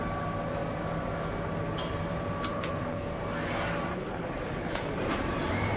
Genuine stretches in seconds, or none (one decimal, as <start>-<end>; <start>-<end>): 0.0-2.5; 3.1-3.9; 4.9-5.8